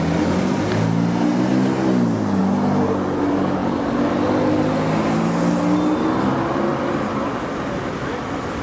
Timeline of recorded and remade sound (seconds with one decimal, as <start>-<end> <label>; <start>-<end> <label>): 0.0-8.6 recorded